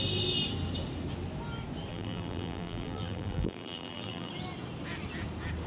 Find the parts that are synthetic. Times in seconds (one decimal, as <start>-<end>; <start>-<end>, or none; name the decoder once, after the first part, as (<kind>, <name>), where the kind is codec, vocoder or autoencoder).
1.9-4.3 (vocoder, BigVGAN v2)